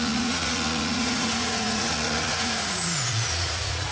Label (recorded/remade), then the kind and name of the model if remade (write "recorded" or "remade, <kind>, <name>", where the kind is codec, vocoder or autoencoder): remade, vocoder, Vocos